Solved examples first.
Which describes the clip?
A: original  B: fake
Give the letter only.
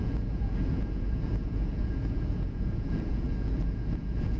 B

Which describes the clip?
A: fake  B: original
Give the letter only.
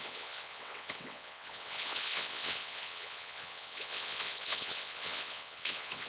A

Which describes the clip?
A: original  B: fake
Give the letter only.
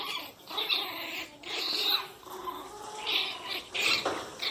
A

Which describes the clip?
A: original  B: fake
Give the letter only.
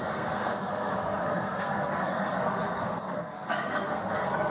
B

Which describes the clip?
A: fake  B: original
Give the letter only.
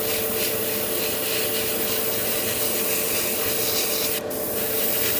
B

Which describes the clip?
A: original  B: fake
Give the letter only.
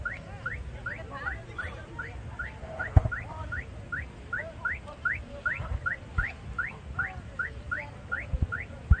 A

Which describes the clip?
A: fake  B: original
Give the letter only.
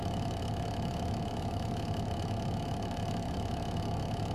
A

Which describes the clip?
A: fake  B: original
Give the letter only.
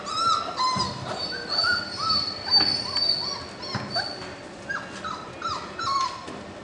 B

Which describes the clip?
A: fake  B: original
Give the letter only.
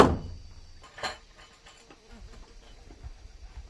B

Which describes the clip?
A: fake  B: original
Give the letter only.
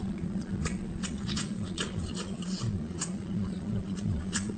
A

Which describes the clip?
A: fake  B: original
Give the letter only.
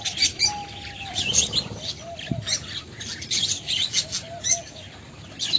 B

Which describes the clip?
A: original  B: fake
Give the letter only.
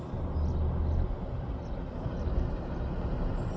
A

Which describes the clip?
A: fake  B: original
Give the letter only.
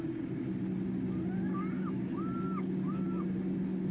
B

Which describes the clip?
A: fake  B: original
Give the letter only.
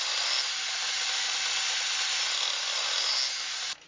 B